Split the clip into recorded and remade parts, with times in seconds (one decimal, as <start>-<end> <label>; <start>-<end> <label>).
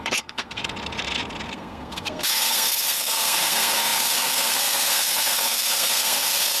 0.0-0.6 remade; 0.6-1.5 recorded; 1.5-6.6 remade